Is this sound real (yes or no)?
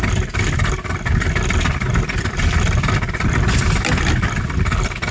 yes